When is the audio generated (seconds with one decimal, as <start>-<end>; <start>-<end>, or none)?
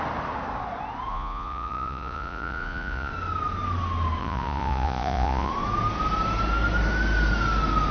1.1-3.1; 4.2-5.5